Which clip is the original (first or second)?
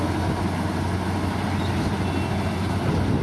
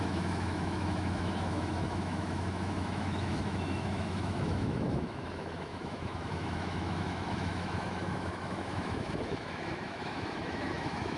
first